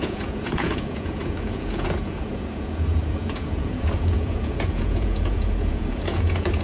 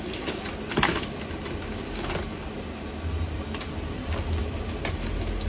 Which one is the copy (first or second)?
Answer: first